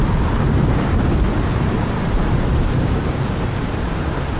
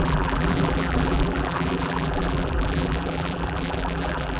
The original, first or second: first